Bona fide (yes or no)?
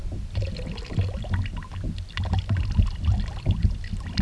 yes